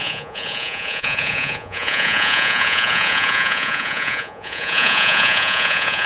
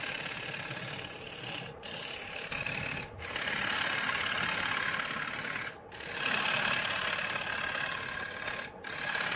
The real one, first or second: second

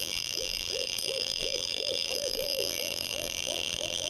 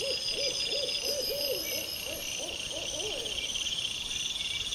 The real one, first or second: second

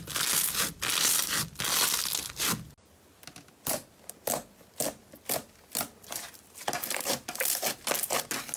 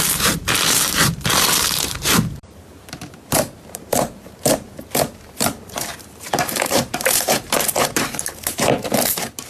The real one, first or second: first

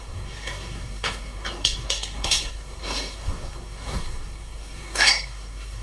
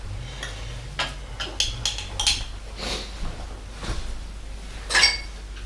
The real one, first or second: second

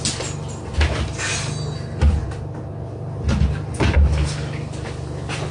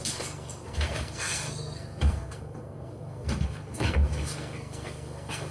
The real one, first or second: first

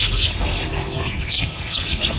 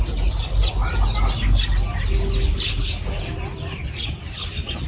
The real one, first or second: second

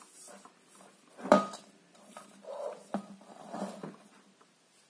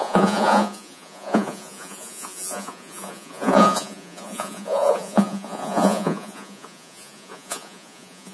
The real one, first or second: first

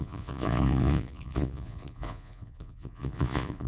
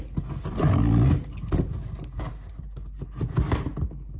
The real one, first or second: second